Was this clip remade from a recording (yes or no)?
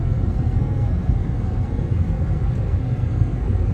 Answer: yes